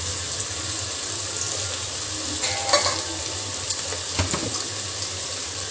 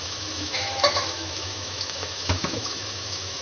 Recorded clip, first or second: first